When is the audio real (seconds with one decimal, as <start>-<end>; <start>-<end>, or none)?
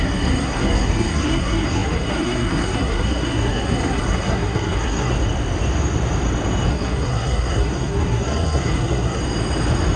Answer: 5.1-6.7; 9.2-10.0